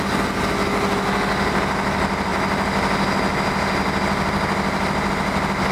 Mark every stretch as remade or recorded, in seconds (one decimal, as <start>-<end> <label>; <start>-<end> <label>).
0.0-5.7 recorded